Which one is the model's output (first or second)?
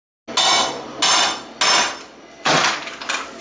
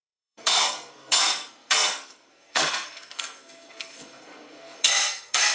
second